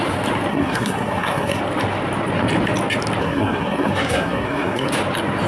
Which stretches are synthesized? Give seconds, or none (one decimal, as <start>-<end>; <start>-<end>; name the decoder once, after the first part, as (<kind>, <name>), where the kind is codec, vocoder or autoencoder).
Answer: 0.5-1.6 (codec, SNAC); 3.2-4.9